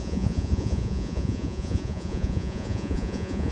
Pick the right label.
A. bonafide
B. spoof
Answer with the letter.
B